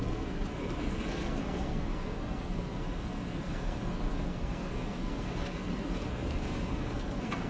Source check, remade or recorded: remade